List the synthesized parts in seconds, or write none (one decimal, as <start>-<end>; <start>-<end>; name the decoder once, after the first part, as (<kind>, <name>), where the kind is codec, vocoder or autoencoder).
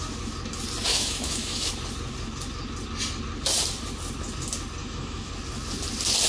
0.9-1.7 (autoencoder, DAC-VAE); 4.8-5.3